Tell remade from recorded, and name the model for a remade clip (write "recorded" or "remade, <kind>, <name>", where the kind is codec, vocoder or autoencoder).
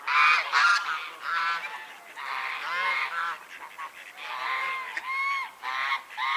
recorded